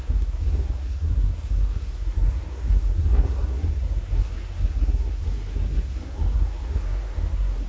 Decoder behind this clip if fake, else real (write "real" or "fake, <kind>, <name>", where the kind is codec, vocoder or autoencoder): fake, codec, SNAC